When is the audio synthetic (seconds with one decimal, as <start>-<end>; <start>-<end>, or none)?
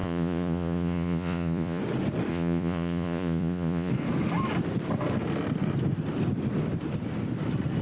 0.0-1.8; 2.3-3.9